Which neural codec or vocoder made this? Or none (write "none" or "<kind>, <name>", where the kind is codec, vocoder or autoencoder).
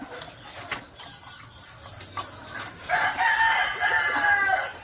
none